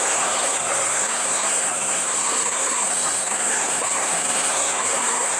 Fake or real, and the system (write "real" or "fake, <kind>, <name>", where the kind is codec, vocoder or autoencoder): fake, codec, SNAC